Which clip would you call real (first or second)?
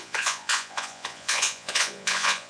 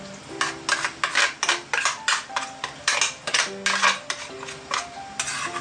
second